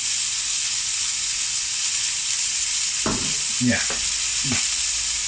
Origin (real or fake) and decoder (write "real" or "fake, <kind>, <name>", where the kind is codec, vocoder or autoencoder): real